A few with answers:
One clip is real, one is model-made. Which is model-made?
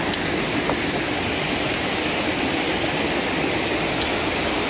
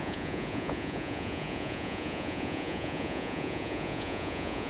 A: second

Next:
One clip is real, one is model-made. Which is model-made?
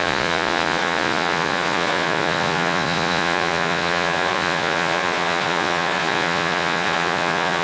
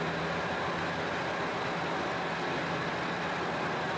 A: first